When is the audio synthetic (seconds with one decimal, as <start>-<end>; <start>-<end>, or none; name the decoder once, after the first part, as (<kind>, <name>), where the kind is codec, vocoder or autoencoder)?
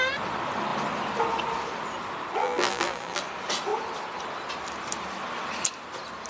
2.4-3.2 (vocoder, BigVGAN v2)